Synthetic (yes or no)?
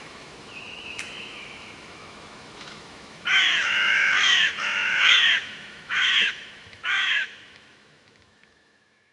yes